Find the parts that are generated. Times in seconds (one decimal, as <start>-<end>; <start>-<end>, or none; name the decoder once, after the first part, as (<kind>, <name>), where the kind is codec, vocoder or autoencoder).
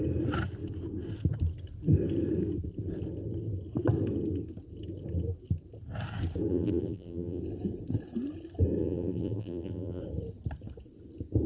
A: 6.5-7.4 (vocoder, BigVGAN v2); 8.8-10.0